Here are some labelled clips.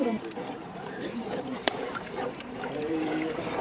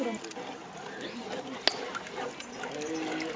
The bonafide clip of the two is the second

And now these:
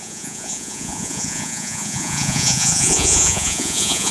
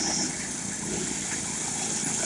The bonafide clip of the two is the second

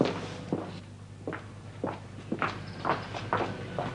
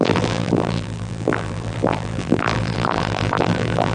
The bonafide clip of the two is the first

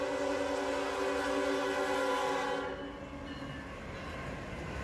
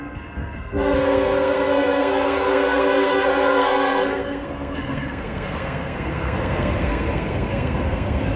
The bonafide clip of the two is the first